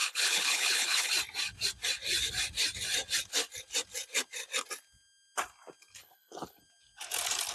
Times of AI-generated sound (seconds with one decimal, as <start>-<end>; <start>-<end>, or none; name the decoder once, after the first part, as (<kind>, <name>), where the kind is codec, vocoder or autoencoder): 0.0-1.1 (codec, HILCodec); 6.0-6.6